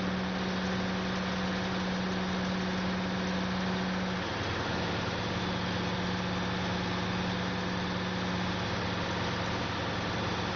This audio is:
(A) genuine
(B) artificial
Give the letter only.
A